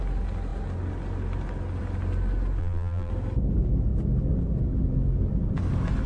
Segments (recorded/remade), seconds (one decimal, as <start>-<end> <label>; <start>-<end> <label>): 0.0-2.6 recorded; 2.6-3.1 remade; 3.1-6.1 recorded